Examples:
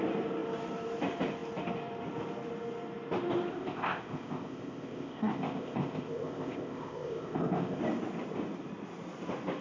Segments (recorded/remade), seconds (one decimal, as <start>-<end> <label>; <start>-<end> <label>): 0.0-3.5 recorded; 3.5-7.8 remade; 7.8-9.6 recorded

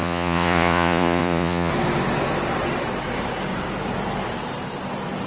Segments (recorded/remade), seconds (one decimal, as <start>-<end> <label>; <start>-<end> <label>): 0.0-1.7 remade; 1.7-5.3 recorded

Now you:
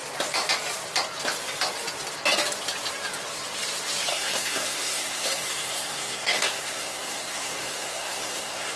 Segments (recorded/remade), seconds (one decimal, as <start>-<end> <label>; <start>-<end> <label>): 0.0-4.1 recorded; 4.1-8.8 remade

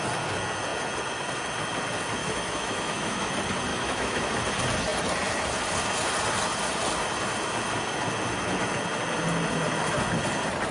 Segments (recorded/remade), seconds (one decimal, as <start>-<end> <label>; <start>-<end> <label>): 0.0-2.2 recorded; 2.2-3.3 remade; 3.3-3.7 recorded; 3.7-4.3 remade; 4.3-10.7 recorded

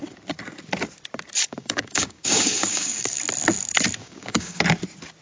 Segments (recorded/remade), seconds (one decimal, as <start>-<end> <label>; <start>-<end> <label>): 0.0-1.4 recorded; 1.4-3.2 remade; 3.2-4.0 recorded; 4.0-4.6 remade; 4.6-5.2 recorded

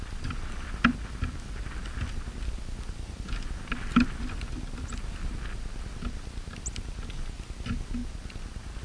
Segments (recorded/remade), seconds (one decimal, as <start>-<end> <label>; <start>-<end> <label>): 0.0-8.8 recorded

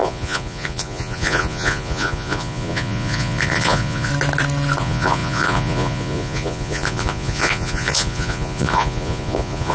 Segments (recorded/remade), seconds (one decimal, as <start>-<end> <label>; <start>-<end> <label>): 0.0-4.1 remade; 4.1-4.8 recorded; 4.8-9.7 remade